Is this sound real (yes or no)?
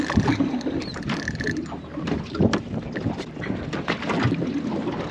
yes